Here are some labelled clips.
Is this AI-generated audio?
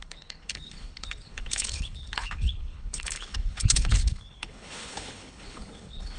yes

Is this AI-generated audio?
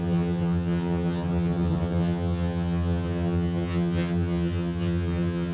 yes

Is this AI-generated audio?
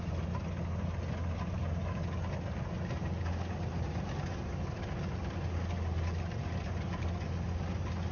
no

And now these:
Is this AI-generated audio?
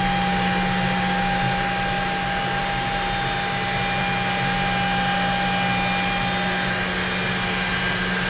no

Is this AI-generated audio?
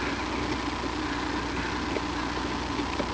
no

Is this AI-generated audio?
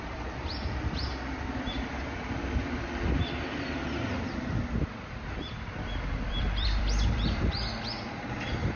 yes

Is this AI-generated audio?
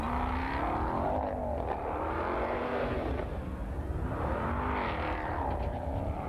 no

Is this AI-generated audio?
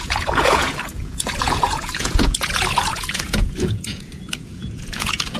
yes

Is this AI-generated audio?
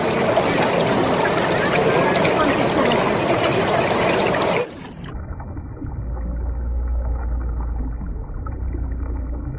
no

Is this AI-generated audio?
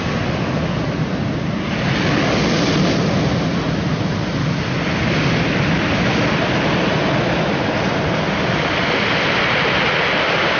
no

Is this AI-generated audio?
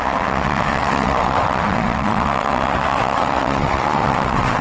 yes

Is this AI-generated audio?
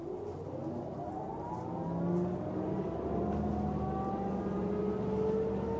no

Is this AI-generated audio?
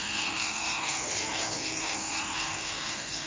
yes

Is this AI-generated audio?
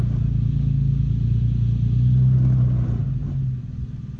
no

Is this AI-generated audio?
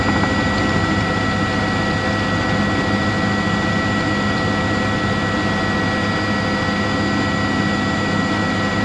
no